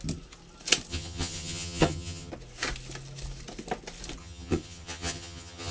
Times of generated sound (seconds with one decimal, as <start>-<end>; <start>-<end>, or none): 0.9-2.3; 4.2-5.7